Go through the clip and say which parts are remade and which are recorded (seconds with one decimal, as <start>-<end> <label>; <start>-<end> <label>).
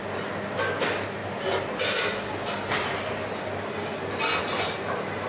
0.0-5.3 recorded